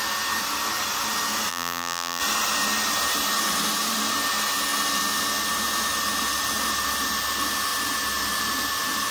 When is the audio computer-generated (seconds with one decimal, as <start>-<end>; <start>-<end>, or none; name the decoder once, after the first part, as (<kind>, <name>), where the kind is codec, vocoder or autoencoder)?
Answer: 1.5-2.2 (vocoder, BigVGAN v2)